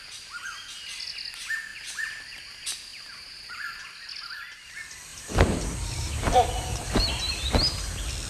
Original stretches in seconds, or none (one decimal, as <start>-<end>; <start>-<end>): 0.0-1.7; 2.4-2.9; 3.5-5.1; 6.8-8.3